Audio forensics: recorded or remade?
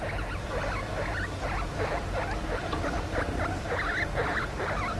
recorded